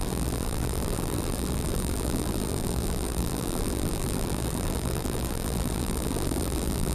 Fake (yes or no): yes